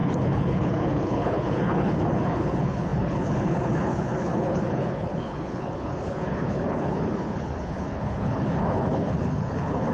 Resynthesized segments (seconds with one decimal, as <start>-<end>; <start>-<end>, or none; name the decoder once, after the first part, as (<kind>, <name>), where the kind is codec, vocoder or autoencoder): 0.0-9.9 (codec, HILCodec)